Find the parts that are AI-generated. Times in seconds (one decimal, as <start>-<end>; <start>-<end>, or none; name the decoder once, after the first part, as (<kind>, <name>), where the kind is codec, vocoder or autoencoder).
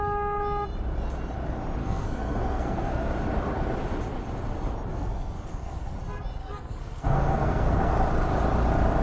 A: 1.8-3.1 (codec, SNAC); 4.9-6.0; 6.4-7.9